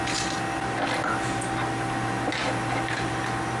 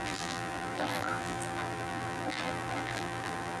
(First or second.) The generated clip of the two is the second